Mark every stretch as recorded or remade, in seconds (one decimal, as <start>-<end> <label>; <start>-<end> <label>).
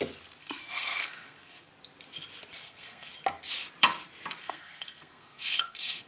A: 0.0-0.4 recorded; 0.4-1.7 remade; 1.7-2.6 recorded; 2.6-3.1 remade; 3.1-4.4 recorded; 4.4-6.1 remade